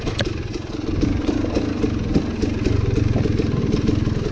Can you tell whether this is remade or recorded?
recorded